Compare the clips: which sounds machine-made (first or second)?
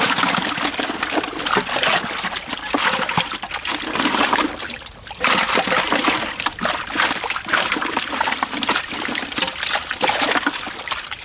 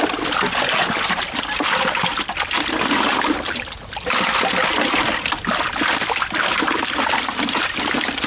first